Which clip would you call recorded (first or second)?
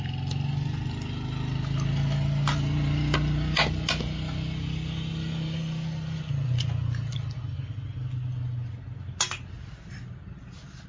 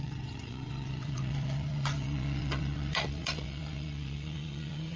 first